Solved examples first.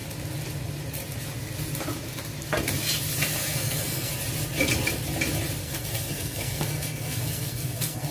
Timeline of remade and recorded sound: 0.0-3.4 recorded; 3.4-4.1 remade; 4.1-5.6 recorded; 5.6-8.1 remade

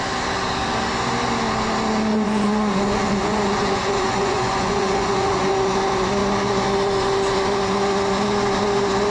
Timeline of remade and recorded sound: 0.0-2.1 recorded; 2.1-5.5 remade; 5.5-9.1 recorded

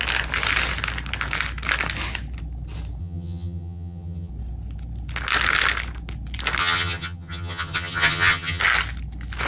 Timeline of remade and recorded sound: 0.0-3.0 recorded; 3.0-4.3 remade; 4.3-6.6 recorded; 6.6-8.6 remade; 8.6-9.5 recorded

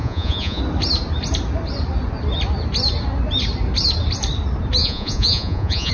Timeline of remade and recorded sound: 0.0-0.6 remade; 0.6-4.8 recorded; 4.8-5.9 remade

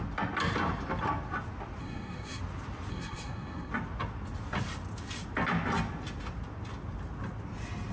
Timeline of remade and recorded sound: 0.0-1.8 recorded; 1.8-2.4 remade; 2.4-2.9 recorded; 2.9-3.7 remade; 3.7-7.9 recorded

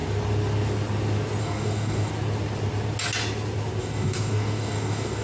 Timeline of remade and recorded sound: 0.0-1.4 recorded; 1.4-2.1 remade; 2.1-3.8 recorded; 3.8-5.2 remade

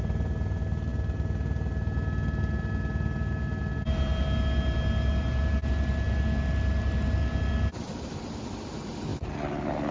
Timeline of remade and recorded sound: 0.0-9.9 recorded

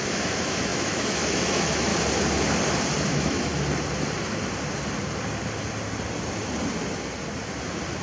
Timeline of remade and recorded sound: 0.0-1.9 remade; 1.9-3.1 recorded; 3.1-3.5 remade; 3.5-8.0 recorded